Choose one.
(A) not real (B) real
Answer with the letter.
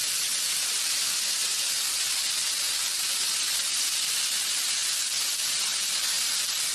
B